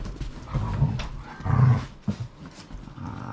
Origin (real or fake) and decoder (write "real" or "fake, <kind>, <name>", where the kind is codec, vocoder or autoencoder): real